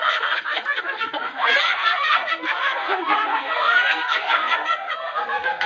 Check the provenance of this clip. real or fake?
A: fake